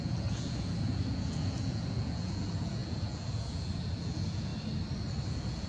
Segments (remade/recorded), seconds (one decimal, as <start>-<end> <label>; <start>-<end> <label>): 0.0-4.5 remade; 4.5-5.3 recorded; 5.3-5.7 remade